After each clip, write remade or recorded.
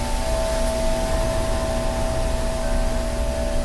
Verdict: recorded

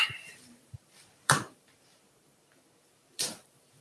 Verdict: remade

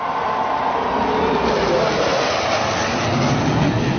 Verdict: recorded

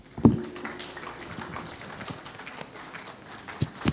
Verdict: recorded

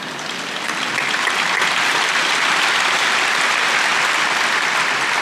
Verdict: recorded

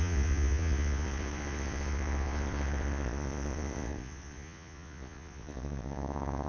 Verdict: remade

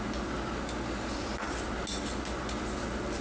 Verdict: recorded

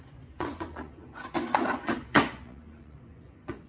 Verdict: remade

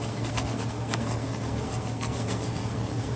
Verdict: remade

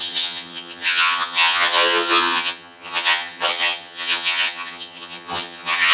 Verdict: remade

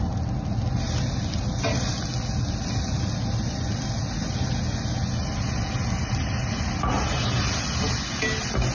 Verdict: recorded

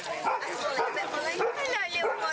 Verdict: recorded